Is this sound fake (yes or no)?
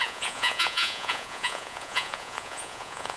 yes